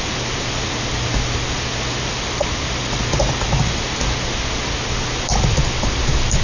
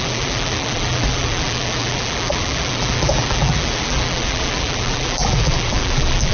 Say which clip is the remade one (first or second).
second